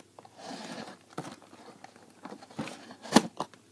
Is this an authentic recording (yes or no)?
yes